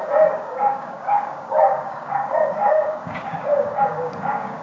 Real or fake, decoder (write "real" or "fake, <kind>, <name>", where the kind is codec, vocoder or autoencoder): fake, codec, DAC